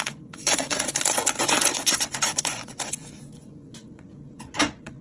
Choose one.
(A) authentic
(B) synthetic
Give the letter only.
B